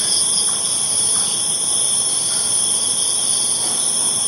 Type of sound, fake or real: real